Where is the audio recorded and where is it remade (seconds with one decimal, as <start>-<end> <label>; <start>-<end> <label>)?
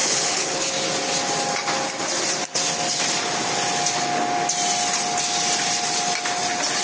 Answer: 0.0-0.7 remade; 0.7-6.8 recorded